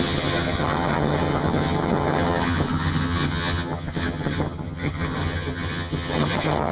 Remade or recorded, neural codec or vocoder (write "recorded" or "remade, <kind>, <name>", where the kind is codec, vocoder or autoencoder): remade, vocoder, HiFi-GAN